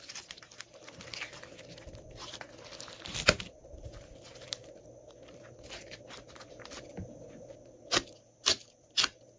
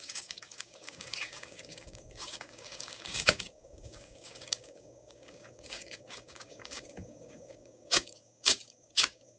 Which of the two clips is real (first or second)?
first